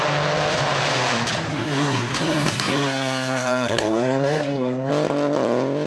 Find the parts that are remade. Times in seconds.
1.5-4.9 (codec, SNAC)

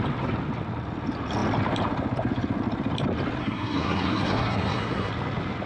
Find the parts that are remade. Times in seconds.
3.4-5.1 (codec, SNAC)